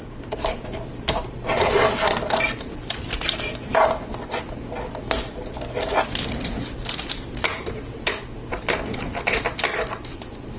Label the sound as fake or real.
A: real